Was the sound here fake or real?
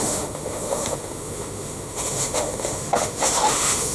fake